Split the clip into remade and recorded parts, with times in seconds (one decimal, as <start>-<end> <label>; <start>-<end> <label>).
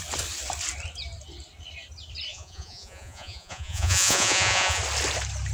0.0-2.3 recorded; 2.3-4.8 remade; 4.8-5.5 recorded